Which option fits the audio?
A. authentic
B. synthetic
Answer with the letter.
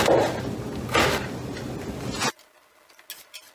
A